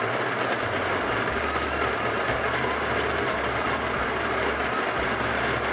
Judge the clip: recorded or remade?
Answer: recorded